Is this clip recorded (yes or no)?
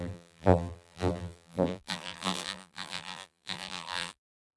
no